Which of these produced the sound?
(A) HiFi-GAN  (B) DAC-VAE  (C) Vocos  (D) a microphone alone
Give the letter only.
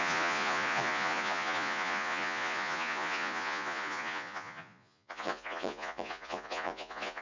C